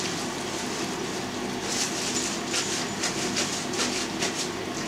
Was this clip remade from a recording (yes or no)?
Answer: no